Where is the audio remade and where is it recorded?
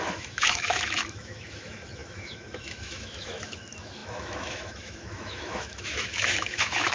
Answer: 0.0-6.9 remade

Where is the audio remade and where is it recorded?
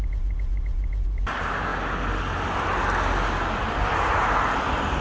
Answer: 0.0-5.0 recorded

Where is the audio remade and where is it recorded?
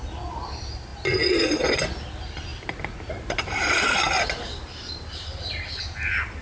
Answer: 0.0-6.4 recorded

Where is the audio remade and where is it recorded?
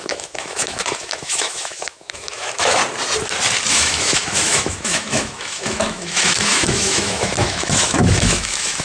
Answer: 0.0-2.8 remade; 2.8-3.7 recorded; 3.7-8.8 remade